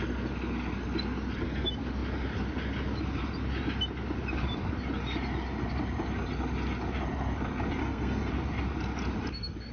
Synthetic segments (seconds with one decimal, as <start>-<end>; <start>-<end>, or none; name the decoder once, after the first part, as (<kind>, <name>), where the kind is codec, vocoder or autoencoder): 7.8-8.3 (codec, SNAC)